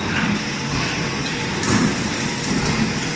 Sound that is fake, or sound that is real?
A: real